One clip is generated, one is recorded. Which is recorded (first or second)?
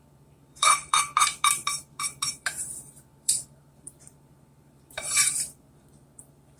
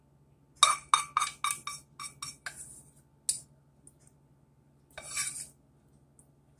second